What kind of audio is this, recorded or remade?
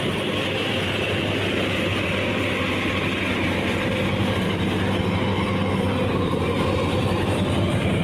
recorded